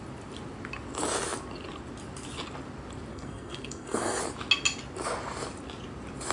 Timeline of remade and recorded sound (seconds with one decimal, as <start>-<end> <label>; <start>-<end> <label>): 0.0-3.1 recorded; 3.1-4.2 remade; 4.2-6.3 recorded